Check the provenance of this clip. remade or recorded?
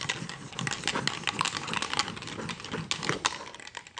recorded